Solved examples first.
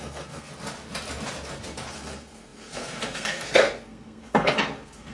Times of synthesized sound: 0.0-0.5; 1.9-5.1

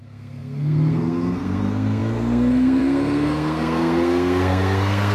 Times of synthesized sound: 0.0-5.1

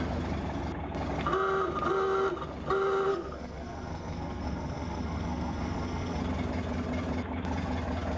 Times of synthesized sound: 3.1-6.2

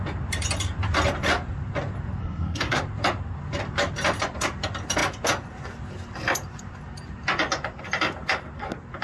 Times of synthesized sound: 2.2-2.8

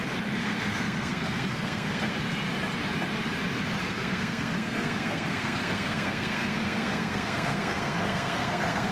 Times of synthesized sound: 0.4-2.1; 3.8-8.9